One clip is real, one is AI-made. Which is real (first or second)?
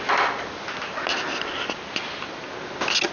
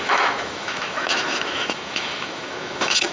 first